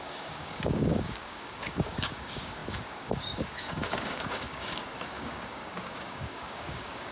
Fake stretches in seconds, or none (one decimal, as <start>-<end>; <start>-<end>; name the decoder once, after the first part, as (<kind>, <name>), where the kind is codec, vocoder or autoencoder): 0.0-7.1 (codec, DAC)